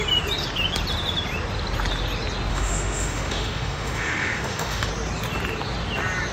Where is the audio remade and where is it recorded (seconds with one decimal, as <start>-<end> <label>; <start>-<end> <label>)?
0.0-2.5 recorded; 2.5-4.9 remade; 4.9-6.3 recorded